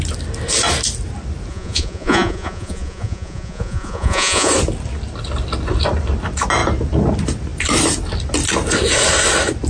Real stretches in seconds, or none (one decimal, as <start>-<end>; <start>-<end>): 0.0-1.5; 4.5-9.7